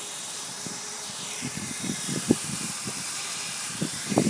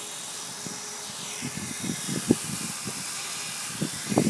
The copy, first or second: first